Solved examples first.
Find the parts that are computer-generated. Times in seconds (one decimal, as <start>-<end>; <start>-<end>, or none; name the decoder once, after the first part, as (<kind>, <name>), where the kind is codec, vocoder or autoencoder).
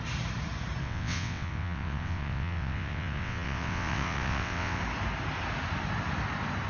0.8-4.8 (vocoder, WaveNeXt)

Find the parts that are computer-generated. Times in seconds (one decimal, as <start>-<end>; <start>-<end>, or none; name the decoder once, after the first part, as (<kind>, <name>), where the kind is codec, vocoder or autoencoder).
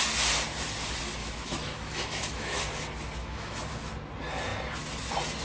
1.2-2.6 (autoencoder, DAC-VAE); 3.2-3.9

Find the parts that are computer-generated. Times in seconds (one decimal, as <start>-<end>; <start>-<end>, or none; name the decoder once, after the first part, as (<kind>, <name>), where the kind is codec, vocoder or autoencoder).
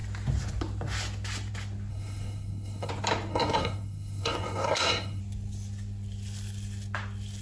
1.9-2.9 (codec, SNAC); 3.3-5.2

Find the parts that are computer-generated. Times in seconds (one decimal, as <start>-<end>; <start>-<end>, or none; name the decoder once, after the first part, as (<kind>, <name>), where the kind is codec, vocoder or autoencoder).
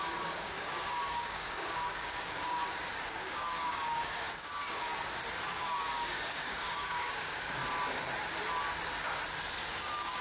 0.0-2.6 (codec, DAC); 3.1-4.9; 5.5-7.6; 9.7-10.2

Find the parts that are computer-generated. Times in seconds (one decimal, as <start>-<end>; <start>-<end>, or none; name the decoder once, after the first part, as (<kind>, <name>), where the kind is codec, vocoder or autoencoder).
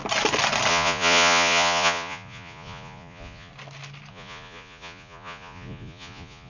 0.7-3.5 (vocoder, Vocos); 4.1-6.5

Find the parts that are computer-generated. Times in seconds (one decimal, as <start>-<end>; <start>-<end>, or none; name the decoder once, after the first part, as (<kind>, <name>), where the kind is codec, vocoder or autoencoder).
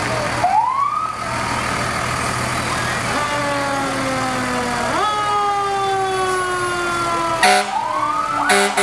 none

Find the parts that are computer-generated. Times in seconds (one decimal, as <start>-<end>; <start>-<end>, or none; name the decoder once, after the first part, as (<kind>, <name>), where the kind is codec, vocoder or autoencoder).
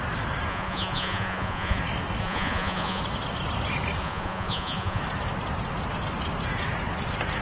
0.5-1.8 (vocoder, Vocos); 2.2-3.0; 4.0-5.0